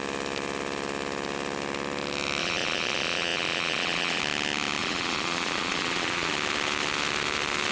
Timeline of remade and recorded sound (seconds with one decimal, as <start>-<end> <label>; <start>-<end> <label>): 0.0-2.4 recorded; 2.4-4.2 remade; 4.2-4.8 recorded; 4.8-6.3 remade; 6.3-7.7 recorded